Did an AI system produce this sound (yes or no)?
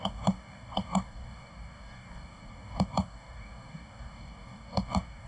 yes